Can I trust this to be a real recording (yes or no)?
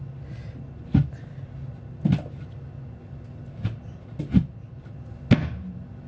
yes